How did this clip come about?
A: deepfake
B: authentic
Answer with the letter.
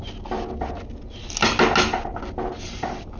B